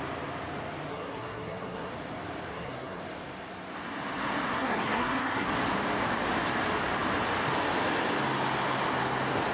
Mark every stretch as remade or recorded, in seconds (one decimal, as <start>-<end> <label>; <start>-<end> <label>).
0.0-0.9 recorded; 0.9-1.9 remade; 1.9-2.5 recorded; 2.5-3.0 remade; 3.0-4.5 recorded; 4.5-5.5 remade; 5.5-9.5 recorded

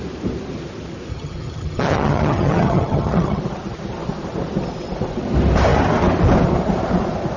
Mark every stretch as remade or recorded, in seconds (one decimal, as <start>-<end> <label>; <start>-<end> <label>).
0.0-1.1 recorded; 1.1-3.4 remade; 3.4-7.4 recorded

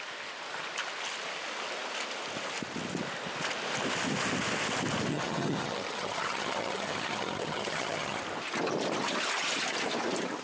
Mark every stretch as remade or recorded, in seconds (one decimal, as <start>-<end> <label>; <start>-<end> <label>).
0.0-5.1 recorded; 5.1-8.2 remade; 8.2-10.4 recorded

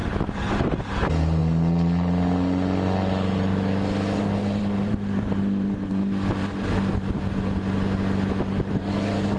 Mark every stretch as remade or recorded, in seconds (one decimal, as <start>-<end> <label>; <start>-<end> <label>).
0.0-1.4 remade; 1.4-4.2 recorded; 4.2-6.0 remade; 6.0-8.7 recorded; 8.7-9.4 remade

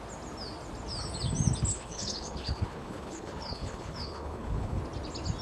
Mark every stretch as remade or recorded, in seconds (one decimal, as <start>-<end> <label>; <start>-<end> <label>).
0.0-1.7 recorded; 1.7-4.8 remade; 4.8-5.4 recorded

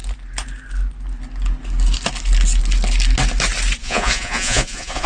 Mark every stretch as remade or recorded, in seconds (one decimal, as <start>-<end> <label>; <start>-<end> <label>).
0.0-3.8 recorded; 3.8-5.1 remade